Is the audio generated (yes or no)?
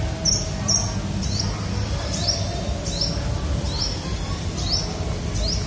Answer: no